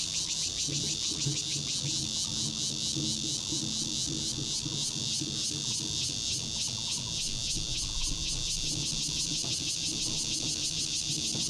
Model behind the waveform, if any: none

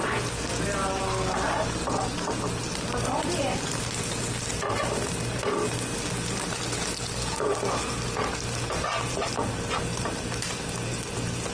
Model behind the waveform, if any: none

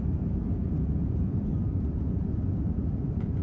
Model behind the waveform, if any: vocoder, Vocos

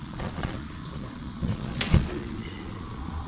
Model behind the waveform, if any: vocoder, Vocos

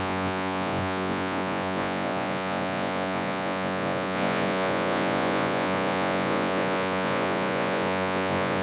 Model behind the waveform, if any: vocoder, Vocos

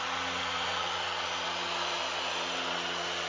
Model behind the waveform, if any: none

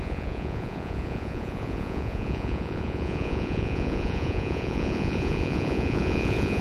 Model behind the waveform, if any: vocoder, Vocos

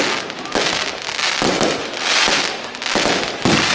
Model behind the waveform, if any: none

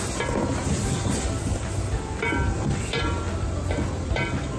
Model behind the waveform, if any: none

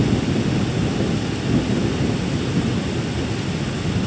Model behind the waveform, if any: none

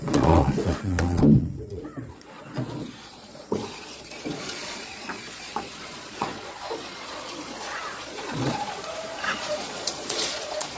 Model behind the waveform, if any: vocoder, Vocos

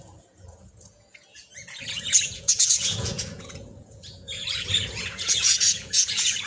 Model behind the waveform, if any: vocoder, Vocos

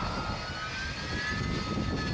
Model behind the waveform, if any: none